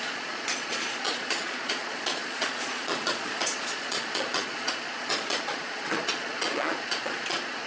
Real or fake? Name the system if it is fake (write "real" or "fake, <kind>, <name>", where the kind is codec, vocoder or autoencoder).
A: fake, vocoder, Vocos